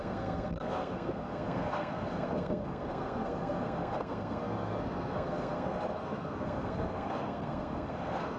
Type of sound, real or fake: fake